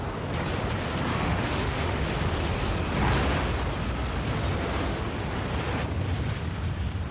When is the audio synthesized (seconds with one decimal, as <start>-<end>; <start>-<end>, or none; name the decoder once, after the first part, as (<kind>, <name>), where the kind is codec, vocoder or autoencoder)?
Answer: 1.1-2.0 (autoencoder, DAC-VAE)

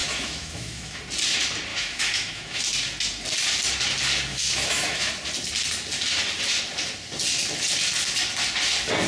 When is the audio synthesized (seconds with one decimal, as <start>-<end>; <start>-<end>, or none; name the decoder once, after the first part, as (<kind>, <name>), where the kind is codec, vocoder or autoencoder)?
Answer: 0.0-1.0 (autoencoder, DAC-VAE); 1.7-2.6; 4.3-5.1

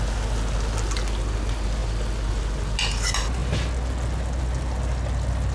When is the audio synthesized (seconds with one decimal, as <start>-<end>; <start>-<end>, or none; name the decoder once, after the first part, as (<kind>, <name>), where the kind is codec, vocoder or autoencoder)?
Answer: none

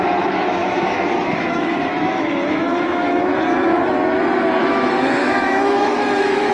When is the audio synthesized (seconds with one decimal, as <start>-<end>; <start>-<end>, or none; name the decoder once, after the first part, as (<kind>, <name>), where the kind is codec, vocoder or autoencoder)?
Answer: 0.6-3.3 (autoencoder, DAC-VAE); 4.6-6.5

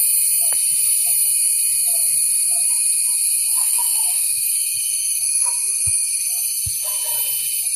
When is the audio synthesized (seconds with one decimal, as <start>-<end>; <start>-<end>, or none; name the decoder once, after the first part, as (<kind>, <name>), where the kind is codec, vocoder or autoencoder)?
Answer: 3.6-5.5 (autoencoder, DAC-VAE)

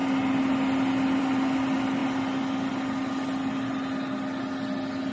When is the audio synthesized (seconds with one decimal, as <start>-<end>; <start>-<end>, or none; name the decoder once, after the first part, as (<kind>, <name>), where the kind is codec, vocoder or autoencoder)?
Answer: none

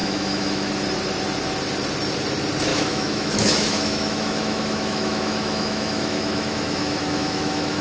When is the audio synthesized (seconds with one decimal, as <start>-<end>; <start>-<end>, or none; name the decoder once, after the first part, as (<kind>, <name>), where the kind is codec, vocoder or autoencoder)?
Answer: 0.0-0.7 (autoencoder, DAC-VAE); 2.7-7.8

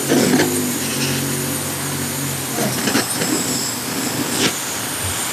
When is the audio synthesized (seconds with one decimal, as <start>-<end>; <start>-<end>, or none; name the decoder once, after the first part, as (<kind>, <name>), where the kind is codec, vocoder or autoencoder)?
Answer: none